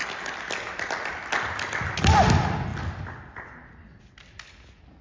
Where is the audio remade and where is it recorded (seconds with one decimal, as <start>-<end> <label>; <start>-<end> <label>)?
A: 0.0-5.0 recorded